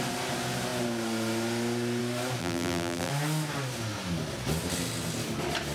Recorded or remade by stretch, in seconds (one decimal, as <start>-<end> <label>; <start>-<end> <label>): 0.0-2.4 recorded; 2.4-3.1 remade; 3.1-5.7 recorded